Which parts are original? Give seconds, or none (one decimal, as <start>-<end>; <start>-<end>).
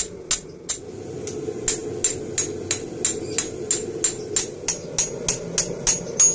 0.0-6.3